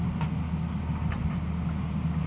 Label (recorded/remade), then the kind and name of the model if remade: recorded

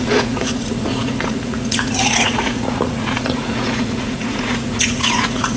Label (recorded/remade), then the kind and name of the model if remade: remade, vocoder, Vocos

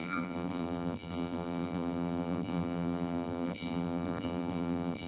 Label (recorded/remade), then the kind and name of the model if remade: remade, vocoder, BigVGAN v2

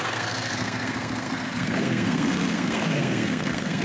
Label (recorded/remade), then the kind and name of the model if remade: remade, codec, SNAC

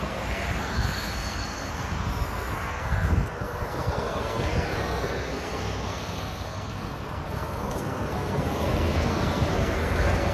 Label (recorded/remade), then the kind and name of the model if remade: remade, codec, SNAC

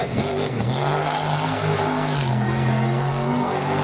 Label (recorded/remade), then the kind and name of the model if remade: remade, codec, SNAC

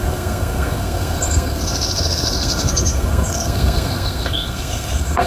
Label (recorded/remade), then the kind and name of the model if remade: remade, codec, SNAC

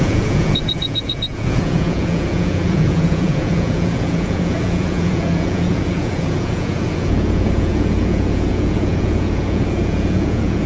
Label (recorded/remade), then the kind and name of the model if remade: remade, vocoder, Vocos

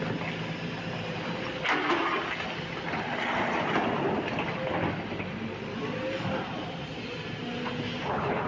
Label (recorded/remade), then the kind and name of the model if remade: recorded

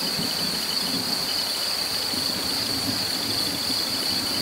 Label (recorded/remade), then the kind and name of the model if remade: recorded